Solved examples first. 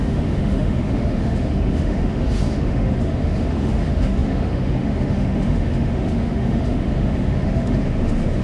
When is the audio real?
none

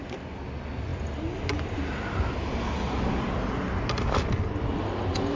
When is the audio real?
0.0-5.4

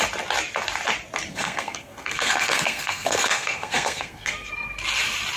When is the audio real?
0.0-1.3; 4.5-5.4

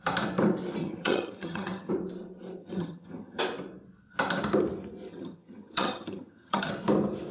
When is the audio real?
0.0-0.8; 1.9-2.6; 3.4-5.1; 6.7-7.3

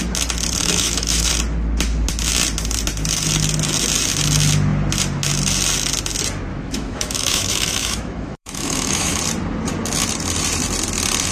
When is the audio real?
0.0-0.6; 1.3-6.5; 9.2-11.3

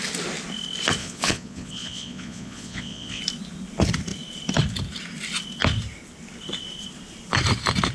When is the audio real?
0.0-1.0; 3.2-7.9

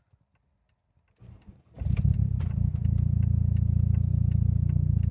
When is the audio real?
0.0-5.1

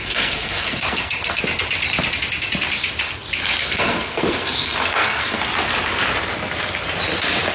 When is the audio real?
1.4-3.6; 5.4-7.5